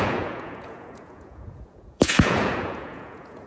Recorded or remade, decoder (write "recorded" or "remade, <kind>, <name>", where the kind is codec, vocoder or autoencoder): remade, vocoder, Vocos